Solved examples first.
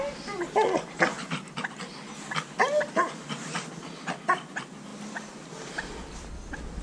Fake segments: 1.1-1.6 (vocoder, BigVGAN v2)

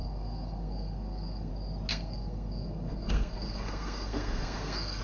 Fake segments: 0.0-1.5 (codec, SNAC); 1.9-5.0

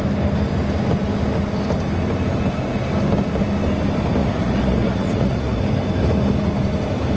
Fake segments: 4.2-5.6 (vocoder, Vocos)

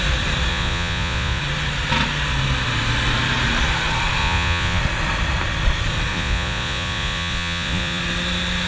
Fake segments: 0.5-1.4 (vocoder, Vocos); 4.2-4.8; 6.1-8.0